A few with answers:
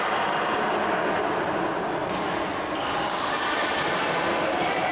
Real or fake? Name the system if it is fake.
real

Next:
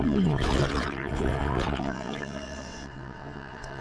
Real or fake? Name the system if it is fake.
fake, vocoder, WaveNeXt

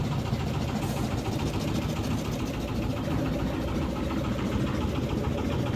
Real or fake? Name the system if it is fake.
real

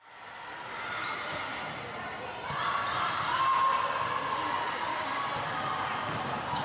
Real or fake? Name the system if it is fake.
real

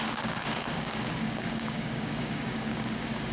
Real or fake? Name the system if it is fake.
fake, codec, DAC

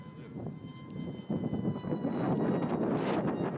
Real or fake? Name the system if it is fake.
real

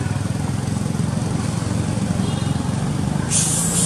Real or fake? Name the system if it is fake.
real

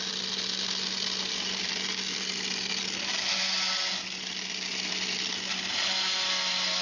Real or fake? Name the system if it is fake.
real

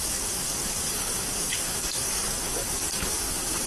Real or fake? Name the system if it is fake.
fake, codec, DAC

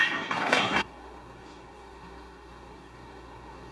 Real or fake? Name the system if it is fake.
fake, codec, SNAC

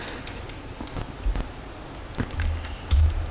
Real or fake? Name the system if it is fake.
real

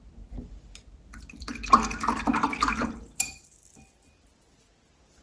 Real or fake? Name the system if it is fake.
real